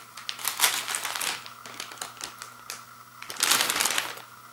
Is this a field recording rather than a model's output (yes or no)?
yes